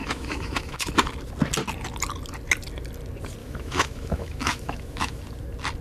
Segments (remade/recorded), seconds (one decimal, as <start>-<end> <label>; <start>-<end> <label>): 0.0-0.9 remade; 0.9-3.4 recorded; 3.4-5.2 remade; 5.2-5.8 recorded